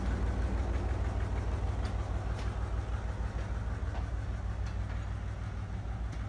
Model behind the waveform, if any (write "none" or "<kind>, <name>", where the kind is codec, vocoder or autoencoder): none